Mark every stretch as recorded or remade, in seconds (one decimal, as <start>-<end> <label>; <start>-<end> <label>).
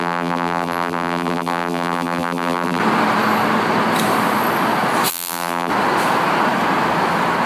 0.0-2.8 remade; 2.8-5.1 recorded; 5.1-5.7 remade; 5.7-7.5 recorded